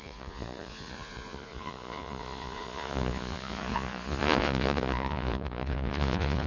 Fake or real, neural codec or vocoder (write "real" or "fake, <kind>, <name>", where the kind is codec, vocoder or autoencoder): fake, vocoder, Vocos